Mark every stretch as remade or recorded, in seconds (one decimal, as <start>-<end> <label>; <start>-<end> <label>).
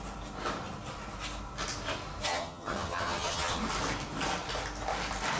0.0-2.3 recorded; 2.3-3.6 remade; 3.6-5.4 recorded